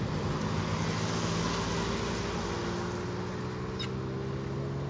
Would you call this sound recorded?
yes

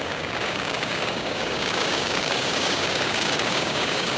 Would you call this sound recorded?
no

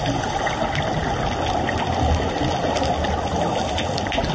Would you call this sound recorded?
yes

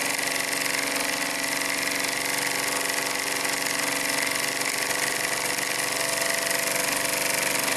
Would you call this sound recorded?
yes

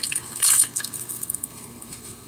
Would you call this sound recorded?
no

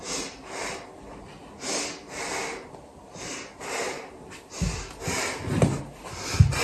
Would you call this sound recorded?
yes